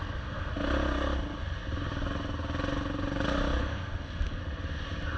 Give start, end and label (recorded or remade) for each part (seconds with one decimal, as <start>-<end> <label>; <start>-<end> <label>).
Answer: 0.0-0.5 remade; 0.5-3.6 recorded; 3.6-4.4 remade; 4.4-5.2 recorded